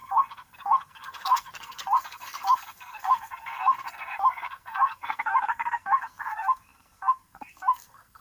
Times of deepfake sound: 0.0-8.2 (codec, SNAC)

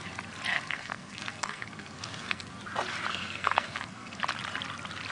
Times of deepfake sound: 0.5-2.5 (codec, SNAC); 3.1-4.2

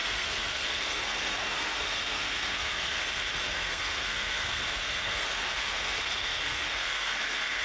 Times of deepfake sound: 0.0-7.6 (codec, SNAC)

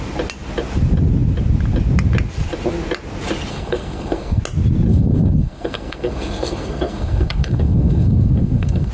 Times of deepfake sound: 3.5-4.4 (codec, SNAC); 4.9-8.9

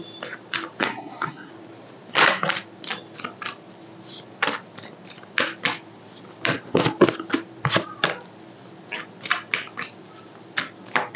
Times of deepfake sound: 0.8-1.5 (codec, SNAC)

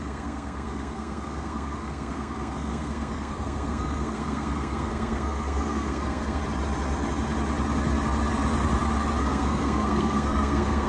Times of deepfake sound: 0.0-6.4 (codec, SNAC); 9.2-10.9